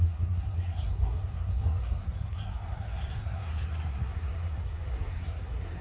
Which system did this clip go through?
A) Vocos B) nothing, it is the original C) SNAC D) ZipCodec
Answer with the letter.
C